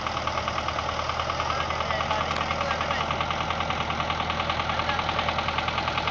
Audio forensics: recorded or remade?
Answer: recorded